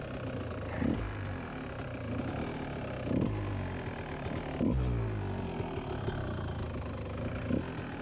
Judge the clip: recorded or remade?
recorded